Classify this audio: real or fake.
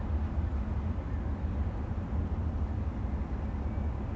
real